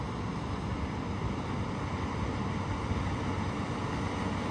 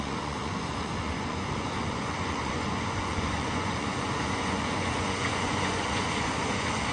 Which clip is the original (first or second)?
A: first